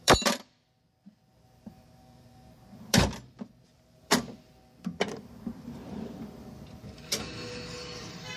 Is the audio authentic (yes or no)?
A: no